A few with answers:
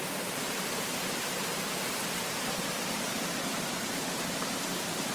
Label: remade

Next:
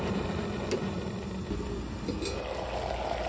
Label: recorded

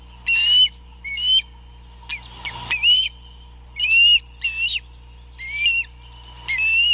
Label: recorded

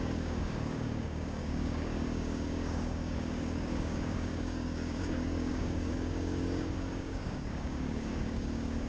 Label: remade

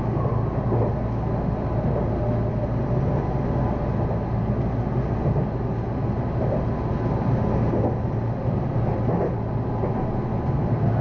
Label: recorded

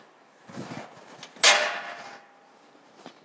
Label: recorded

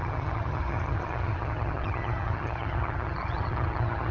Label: remade